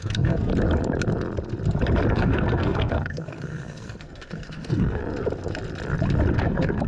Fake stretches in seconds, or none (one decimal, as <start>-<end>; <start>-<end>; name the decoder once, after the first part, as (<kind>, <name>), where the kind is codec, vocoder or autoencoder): 0.0-0.5 (codec, SNAC); 2.1-5.0; 6.3-6.9